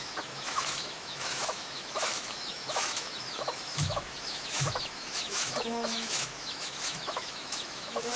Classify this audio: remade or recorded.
remade